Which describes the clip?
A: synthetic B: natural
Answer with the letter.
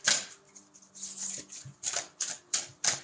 B